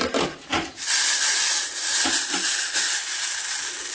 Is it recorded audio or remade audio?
recorded